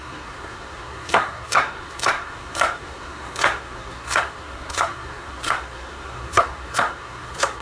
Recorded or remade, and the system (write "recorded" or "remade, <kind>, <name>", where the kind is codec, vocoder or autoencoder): remade, codec, SNAC